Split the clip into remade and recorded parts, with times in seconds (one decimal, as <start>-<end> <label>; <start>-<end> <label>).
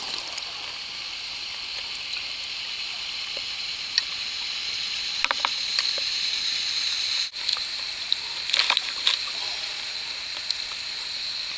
0.0-11.6 recorded